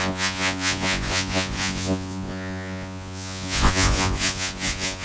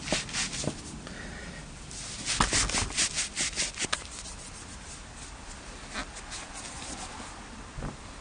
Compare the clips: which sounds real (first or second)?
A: second